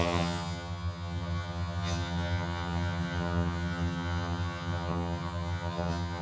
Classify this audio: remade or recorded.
remade